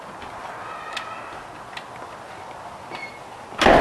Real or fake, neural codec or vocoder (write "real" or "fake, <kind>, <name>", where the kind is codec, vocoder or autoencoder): real